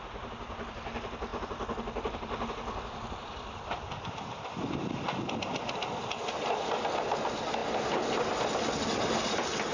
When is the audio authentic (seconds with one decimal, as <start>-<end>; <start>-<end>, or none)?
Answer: 0.0-9.7